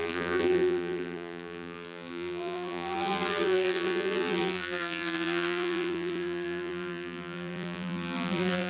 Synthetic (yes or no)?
yes